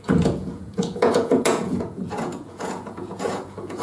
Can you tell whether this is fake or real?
fake